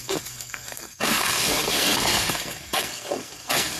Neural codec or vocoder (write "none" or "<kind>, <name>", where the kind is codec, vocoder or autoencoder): codec, SNAC